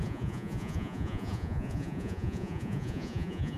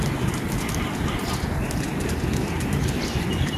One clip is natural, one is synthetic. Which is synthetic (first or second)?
first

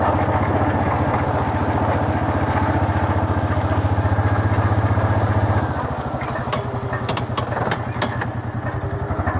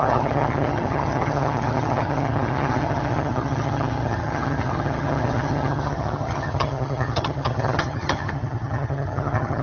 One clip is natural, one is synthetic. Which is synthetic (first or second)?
second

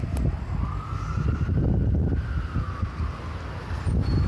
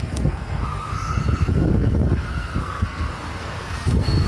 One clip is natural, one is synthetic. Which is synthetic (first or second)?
second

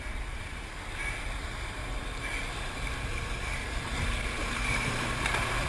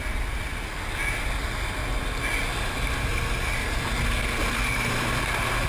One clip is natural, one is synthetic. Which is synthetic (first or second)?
first